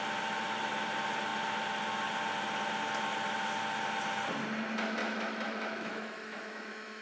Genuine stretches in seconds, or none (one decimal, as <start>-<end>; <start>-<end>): 0.0-5.0